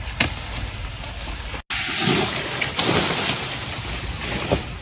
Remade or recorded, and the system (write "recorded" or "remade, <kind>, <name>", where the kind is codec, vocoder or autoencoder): recorded